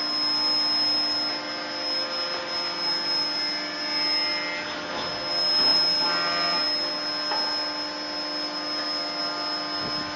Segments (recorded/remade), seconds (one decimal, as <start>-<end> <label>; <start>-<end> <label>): 0.0-10.2 recorded